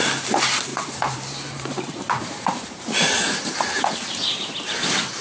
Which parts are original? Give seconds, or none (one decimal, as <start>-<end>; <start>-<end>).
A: 0.0-0.7; 3.8-5.2